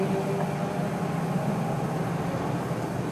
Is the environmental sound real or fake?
real